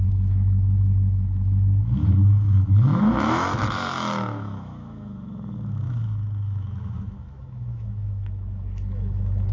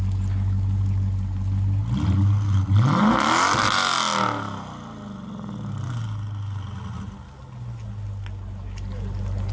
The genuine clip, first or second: second